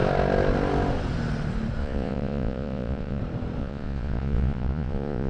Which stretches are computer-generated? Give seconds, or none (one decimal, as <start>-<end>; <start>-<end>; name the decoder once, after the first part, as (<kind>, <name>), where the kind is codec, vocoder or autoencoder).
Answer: 1.8-3.2 (vocoder, Vocos); 3.6-5.3